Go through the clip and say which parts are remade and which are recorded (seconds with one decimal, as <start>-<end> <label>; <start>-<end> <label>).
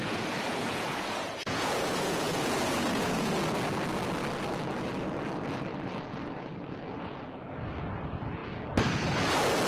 0.0-3.3 remade; 3.3-9.7 recorded